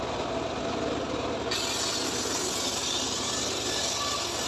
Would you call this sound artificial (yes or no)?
no